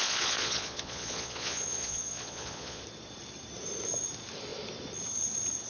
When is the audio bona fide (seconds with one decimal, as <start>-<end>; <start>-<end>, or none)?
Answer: 2.8-5.7